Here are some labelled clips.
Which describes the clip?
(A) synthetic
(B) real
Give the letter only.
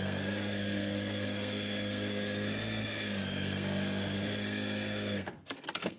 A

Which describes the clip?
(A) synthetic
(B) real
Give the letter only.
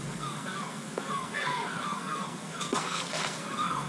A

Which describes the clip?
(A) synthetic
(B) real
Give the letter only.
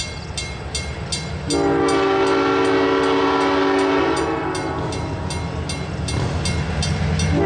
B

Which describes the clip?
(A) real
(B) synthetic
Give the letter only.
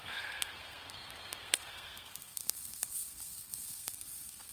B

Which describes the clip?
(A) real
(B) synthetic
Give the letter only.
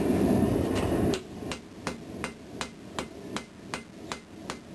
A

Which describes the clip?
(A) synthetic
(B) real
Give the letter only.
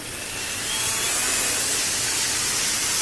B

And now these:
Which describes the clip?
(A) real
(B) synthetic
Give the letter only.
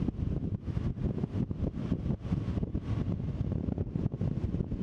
A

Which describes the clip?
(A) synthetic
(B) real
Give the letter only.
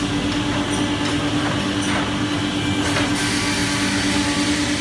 B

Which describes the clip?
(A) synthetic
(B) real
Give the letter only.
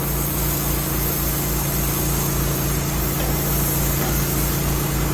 B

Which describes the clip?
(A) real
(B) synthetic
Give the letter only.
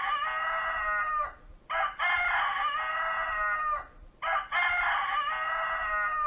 A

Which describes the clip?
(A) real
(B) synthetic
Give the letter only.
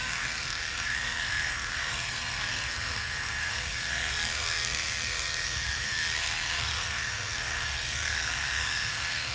B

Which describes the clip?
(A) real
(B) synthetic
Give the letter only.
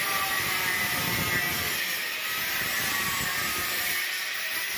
A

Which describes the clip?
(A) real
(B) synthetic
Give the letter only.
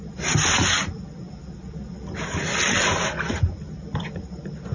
A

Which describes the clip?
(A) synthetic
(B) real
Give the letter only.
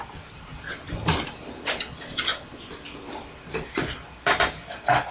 B